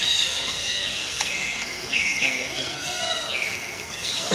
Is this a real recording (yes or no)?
no